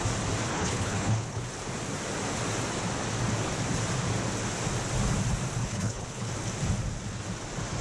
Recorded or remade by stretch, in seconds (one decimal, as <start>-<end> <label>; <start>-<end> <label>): 0.0-0.5 recorded; 0.5-1.4 remade; 1.4-5.6 recorded; 5.6-6.3 remade; 6.3-7.8 recorded